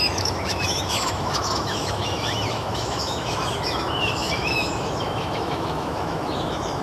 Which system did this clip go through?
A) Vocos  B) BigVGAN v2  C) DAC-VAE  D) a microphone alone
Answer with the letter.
C